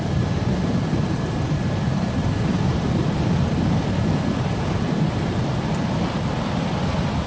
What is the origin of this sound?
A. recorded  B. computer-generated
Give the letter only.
A